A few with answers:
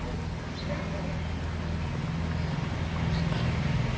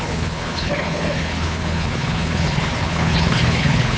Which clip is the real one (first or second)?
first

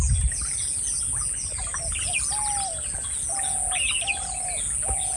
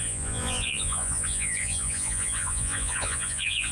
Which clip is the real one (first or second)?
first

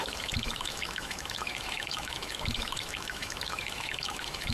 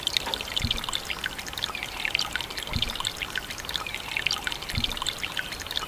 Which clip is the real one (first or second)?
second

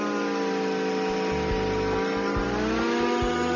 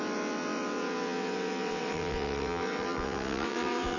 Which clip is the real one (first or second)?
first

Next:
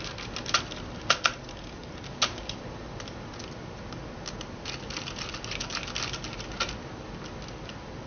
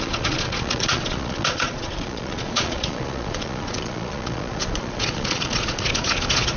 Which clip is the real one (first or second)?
first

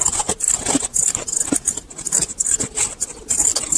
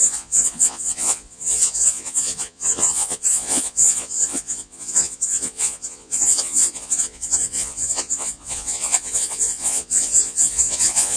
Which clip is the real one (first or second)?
first